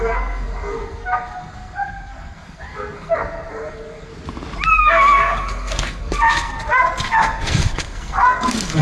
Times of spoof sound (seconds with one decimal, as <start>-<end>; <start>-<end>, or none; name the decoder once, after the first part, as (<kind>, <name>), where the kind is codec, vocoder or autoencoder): 0.0-4.1 (codec, SNAC); 4.8-8.8